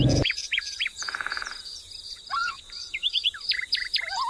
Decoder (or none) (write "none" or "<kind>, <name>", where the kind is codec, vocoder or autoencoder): vocoder, Vocos